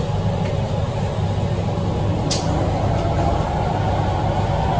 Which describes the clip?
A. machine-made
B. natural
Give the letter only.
B